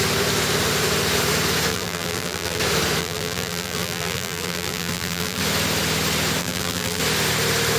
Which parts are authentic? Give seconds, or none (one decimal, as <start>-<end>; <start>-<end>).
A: 0.0-1.7; 2.6-3.0; 5.4-6.4; 7.0-7.8